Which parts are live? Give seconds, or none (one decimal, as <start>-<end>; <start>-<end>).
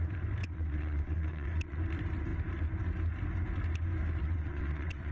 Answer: 0.0-0.4; 1.8-4.2